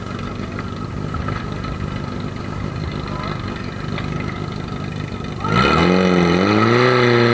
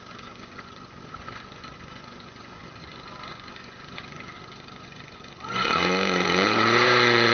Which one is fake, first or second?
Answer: second